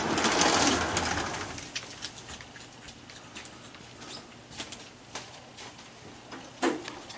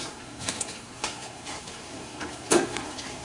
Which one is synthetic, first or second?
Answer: second